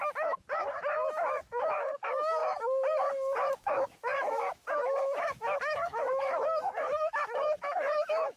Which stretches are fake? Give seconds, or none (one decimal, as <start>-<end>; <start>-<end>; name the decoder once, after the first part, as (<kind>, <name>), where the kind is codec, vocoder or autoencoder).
0.0-8.4 (autoencoder, DAC-VAE)